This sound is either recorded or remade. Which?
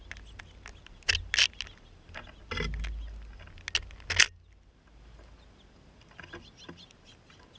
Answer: recorded